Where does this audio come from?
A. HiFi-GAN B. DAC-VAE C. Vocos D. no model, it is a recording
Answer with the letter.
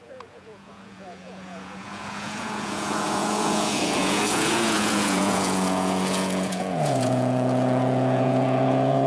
C